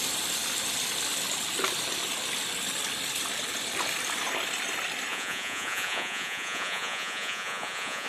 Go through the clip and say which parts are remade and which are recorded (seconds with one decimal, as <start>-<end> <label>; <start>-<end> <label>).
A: 0.0-5.1 recorded; 5.1-8.1 remade